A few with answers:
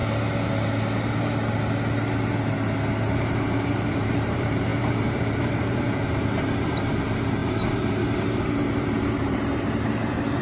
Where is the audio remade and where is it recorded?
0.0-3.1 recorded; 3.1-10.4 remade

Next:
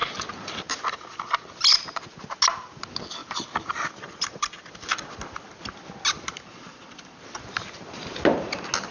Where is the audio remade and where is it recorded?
0.0-1.6 remade; 1.6-3.2 recorded; 3.2-5.1 remade; 5.1-6.7 recorded; 6.7-7.6 remade; 7.6-8.9 recorded

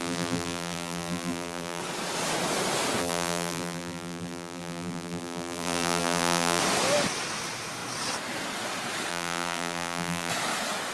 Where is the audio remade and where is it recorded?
0.0-1.8 remade; 1.8-3.0 recorded; 3.0-6.6 remade; 6.6-9.1 recorded; 9.1-10.3 remade; 10.3-10.9 recorded

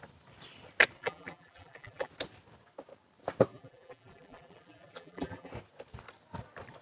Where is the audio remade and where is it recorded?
0.0-1.0 recorded; 1.0-2.1 remade; 2.1-3.5 recorded; 3.5-5.5 remade; 5.5-6.8 recorded

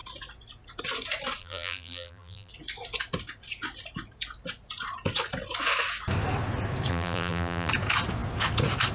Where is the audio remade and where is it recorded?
0.0-1.4 recorded; 1.4-2.5 remade; 2.5-6.9 recorded; 6.9-7.7 remade; 7.7-8.9 recorded

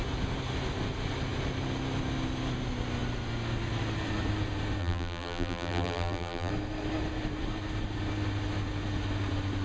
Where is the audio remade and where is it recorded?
0.0-4.8 recorded; 4.8-6.5 remade; 6.5-9.6 recorded